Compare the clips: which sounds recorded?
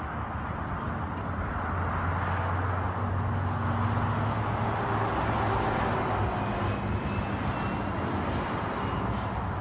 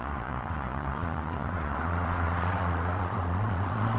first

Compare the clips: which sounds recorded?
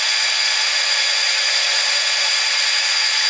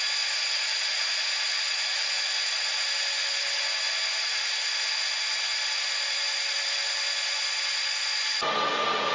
second